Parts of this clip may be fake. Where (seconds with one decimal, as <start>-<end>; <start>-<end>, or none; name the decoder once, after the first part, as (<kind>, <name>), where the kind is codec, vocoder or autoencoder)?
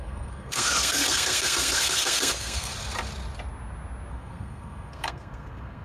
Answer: 0.0-2.7 (codec, SNAC); 4.1-5.8